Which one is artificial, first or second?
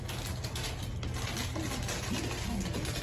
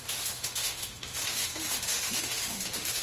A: second